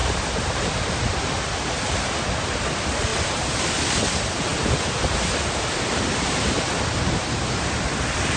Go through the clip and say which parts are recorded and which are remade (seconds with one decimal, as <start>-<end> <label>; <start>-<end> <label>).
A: 0.0-3.1 recorded; 3.1-3.6 remade; 3.6-4.5 recorded; 4.5-8.4 remade